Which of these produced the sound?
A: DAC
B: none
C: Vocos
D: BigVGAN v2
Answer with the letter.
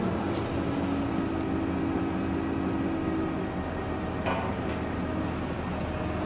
B